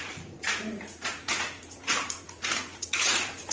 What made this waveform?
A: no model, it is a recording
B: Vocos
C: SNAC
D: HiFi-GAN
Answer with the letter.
B